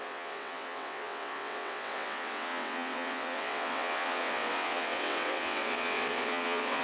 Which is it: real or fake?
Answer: fake